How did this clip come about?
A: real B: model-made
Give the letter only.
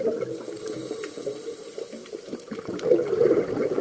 A